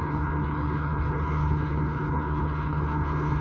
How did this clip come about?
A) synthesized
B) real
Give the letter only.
A